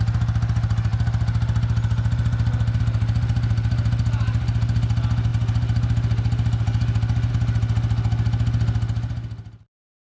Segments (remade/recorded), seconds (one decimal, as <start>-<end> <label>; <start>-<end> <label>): 0.0-10.1 recorded